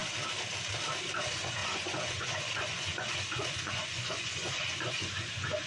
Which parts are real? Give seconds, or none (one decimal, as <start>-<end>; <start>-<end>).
0.0-1.2